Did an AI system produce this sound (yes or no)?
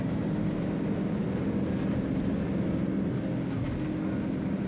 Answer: no